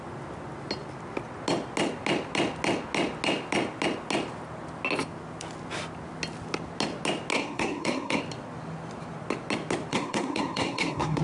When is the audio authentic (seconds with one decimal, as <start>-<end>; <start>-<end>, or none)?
0.0-7.3; 8.2-9.9